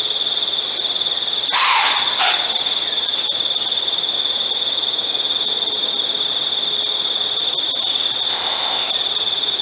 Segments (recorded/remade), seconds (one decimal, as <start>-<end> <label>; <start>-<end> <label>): 0.0-8.3 recorded; 8.3-8.9 remade; 8.9-9.6 recorded